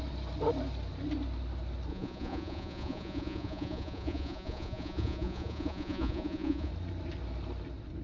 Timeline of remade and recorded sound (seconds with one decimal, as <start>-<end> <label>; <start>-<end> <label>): 0.0-1.9 recorded; 1.9-6.7 remade; 6.7-8.0 recorded